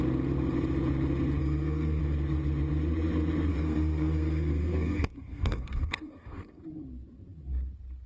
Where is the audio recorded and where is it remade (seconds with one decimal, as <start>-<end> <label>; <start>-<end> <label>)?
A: 0.0-1.4 recorded; 1.4-2.0 remade; 2.0-3.5 recorded; 3.5-6.6 remade; 6.6-8.1 recorded

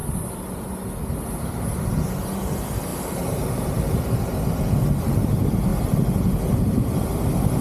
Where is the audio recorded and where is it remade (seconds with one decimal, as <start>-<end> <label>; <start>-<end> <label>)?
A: 0.0-2.9 recorded; 2.9-4.0 remade; 4.0-7.6 recorded

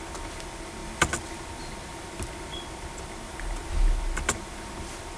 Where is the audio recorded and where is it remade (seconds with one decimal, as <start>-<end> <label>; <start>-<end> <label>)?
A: 0.0-5.2 recorded

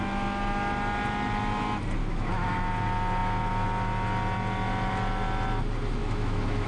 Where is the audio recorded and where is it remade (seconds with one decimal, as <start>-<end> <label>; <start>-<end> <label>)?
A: 0.0-2.0 recorded; 2.0-2.7 remade; 2.7-6.0 recorded; 6.0-6.7 remade

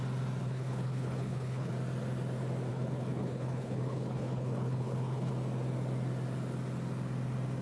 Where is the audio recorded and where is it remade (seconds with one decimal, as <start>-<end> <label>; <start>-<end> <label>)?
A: 0.0-0.4 recorded; 0.4-1.7 remade; 1.7-2.7 recorded; 2.7-5.3 remade; 5.3-7.6 recorded